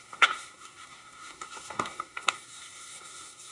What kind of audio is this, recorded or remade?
remade